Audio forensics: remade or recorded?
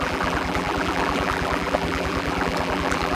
remade